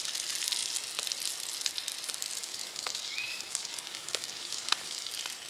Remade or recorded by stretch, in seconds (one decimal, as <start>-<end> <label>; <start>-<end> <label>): 0.0-2.4 recorded; 2.4-5.1 remade; 5.1-5.5 recorded